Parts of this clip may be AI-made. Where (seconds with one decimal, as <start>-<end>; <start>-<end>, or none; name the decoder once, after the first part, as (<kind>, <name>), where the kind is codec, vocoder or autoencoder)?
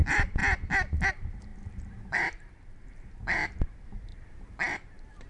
0.0-0.4 (vocoder, BigVGAN v2); 1.1-5.3